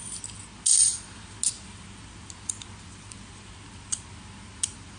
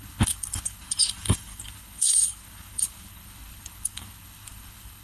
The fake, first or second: second